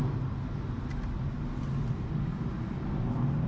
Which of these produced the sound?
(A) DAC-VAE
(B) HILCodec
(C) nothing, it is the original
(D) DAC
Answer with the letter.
C